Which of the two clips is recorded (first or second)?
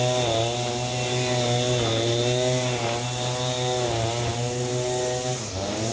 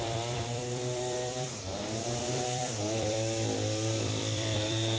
first